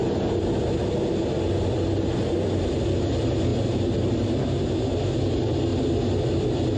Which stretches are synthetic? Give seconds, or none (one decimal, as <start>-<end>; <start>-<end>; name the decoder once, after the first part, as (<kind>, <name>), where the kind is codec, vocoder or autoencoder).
none